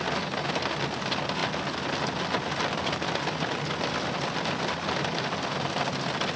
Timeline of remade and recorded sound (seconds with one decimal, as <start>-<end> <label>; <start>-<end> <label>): 0.0-6.4 recorded